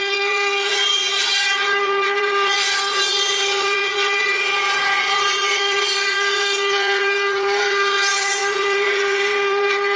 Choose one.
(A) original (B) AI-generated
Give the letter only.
B